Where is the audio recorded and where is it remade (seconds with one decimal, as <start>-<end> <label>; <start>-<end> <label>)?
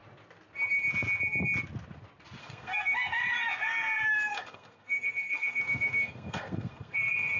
0.0-2.4 recorded; 2.4-3.2 remade; 3.2-4.3 recorded; 4.3-7.4 remade